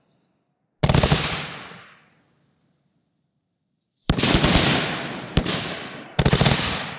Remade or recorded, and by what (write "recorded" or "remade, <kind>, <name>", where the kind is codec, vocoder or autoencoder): recorded